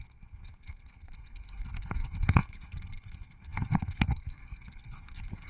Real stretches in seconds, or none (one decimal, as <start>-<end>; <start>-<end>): none